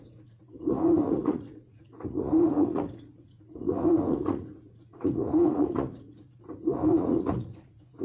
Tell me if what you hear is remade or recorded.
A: remade